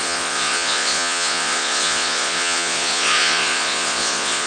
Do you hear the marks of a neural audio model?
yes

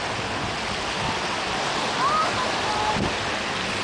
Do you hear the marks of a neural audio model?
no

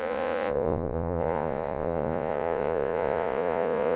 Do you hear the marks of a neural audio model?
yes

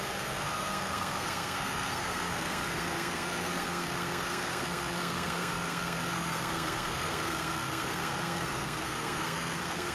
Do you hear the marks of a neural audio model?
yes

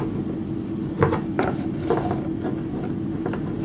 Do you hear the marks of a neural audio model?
no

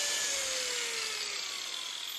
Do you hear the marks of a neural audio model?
no